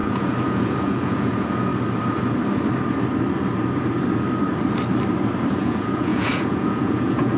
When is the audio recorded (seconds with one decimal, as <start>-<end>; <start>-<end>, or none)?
1.7-5.5